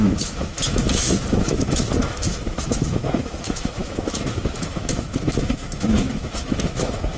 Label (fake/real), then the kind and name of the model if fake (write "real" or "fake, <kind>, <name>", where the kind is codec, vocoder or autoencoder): fake, autoencoder, DAC-VAE